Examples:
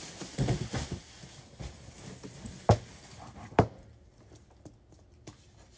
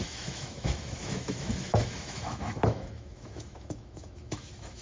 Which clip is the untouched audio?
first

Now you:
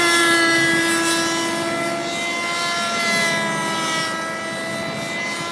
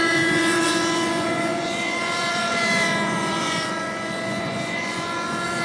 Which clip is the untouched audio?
first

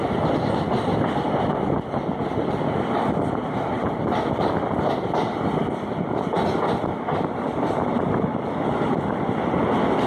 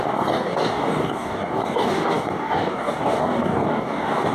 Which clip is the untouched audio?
first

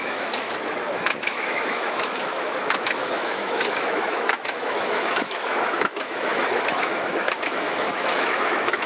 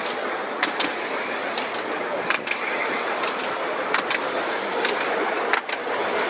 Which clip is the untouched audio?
second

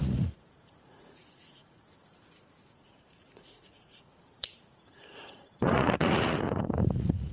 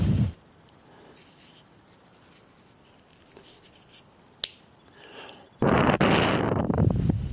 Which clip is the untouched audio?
second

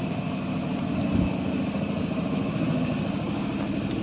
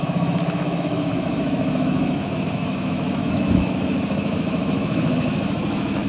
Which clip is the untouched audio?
first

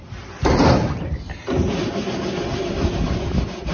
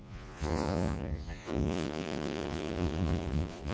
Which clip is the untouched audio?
first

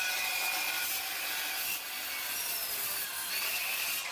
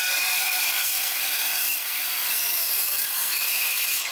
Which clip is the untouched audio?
first